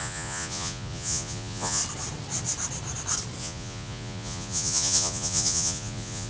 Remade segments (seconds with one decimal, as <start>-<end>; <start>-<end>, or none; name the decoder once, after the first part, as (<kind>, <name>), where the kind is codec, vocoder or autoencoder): 0.0-1.8 (vocoder, Vocos); 3.4-6.3